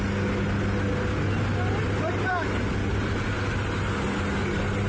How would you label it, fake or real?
real